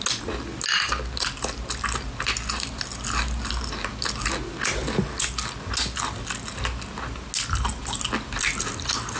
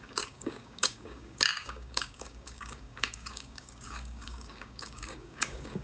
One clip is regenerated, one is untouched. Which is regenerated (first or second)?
second